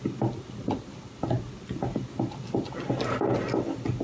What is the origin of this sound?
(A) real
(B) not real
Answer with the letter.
A